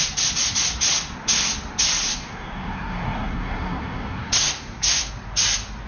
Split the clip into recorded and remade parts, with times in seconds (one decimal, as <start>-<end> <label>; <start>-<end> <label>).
0.0-2.1 recorded; 2.1-5.1 remade; 5.1-5.9 recorded

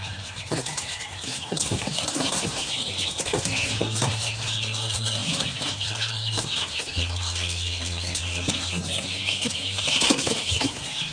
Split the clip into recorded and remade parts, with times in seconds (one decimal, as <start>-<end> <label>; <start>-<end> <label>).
0.0-11.1 remade

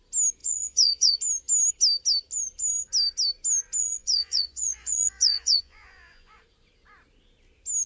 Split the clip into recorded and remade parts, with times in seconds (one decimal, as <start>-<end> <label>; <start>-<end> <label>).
0.0-0.4 recorded; 0.4-1.2 remade; 1.2-3.8 recorded; 3.8-6.4 remade; 6.4-7.9 recorded

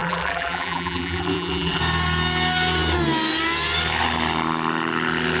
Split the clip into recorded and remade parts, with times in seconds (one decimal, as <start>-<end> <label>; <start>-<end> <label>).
0.0-1.8 remade; 1.8-5.4 recorded

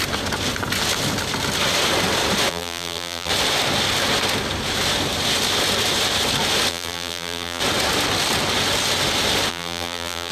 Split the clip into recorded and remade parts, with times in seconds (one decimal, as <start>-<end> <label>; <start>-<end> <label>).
0.0-2.5 recorded; 2.5-3.3 remade; 3.3-6.7 recorded; 6.7-7.6 remade; 7.6-9.5 recorded; 9.5-10.3 remade

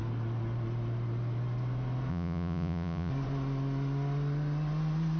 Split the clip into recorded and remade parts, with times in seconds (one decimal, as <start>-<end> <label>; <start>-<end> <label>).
0.0-2.1 recorded; 2.1-3.1 remade; 3.1-5.2 recorded

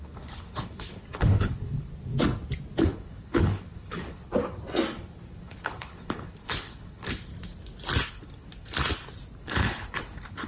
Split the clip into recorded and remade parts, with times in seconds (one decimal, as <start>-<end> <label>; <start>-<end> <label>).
0.0-1.9 remade; 1.9-2.7 recorded; 2.7-4.2 remade; 4.2-5.4 recorded; 5.4-7.3 remade; 7.3-8.1 recorded; 8.1-8.5 remade; 8.5-9.4 recorded; 9.4-10.5 remade

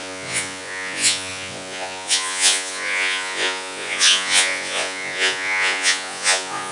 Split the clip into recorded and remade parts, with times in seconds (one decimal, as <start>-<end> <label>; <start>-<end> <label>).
0.0-6.7 remade